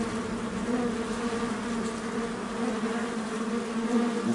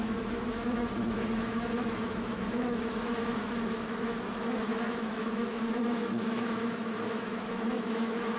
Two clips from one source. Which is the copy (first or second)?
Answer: second